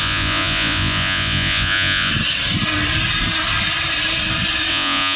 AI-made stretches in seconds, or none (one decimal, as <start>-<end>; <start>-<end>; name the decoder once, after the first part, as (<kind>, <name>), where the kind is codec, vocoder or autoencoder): 0.0-2.1 (vocoder, Vocos); 4.7-5.2